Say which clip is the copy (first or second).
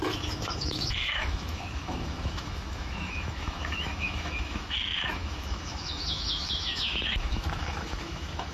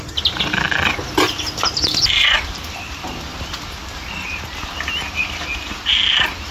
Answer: first